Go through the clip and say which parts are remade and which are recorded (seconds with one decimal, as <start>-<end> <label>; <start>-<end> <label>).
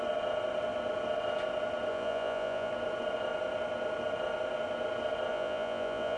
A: 0.0-1.9 recorded; 1.9-2.7 remade; 2.7-5.3 recorded; 5.3-6.2 remade